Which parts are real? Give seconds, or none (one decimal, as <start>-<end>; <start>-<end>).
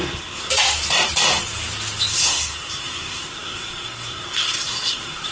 0.5-2.1